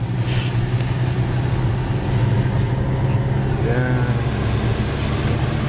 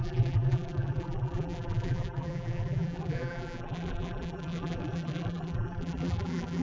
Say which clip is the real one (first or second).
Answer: first